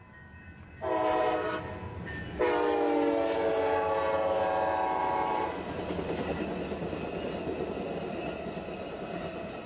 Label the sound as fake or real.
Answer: real